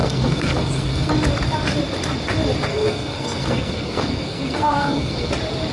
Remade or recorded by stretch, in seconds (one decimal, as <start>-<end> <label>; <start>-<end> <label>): 0.0-1.1 remade; 1.1-2.7 recorded; 2.7-5.3 remade; 5.3-5.7 recorded